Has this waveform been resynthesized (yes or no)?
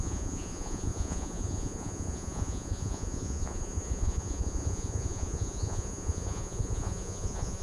yes